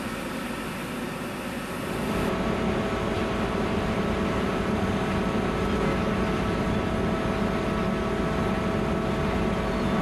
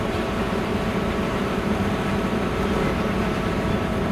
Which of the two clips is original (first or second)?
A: first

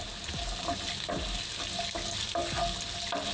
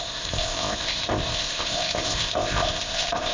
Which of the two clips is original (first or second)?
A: first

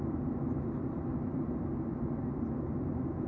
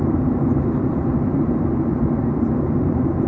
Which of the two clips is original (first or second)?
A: first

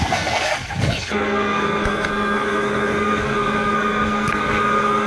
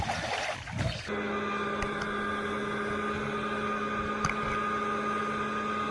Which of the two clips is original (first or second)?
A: second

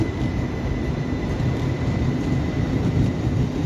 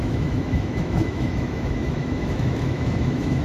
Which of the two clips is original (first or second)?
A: first